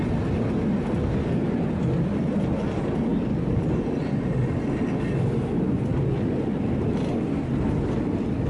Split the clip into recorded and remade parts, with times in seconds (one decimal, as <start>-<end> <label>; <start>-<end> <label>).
0.0-3.1 recorded; 3.1-5.1 remade; 5.1-8.5 recorded